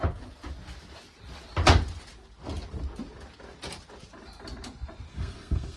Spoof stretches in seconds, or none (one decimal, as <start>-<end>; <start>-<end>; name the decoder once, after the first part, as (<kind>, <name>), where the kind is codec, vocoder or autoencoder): 5.1-5.8 (codec, SNAC)